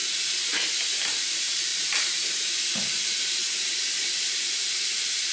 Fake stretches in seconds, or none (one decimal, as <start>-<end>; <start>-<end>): 0.0-5.3